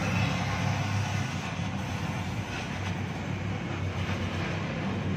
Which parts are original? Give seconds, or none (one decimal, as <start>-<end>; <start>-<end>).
0.0-5.2